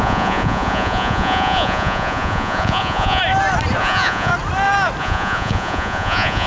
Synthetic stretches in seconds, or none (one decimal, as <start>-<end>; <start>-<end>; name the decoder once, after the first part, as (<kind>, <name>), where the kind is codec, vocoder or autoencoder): 0.0-3.2 (vocoder, Vocos); 3.8-4.3; 5.0-6.5